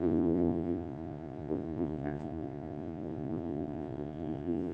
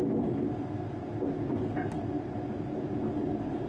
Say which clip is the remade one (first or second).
first